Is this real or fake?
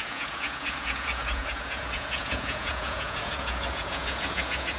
fake